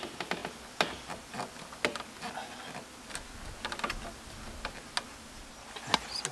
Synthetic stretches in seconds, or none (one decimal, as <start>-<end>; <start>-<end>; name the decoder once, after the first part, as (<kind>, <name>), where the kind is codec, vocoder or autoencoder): none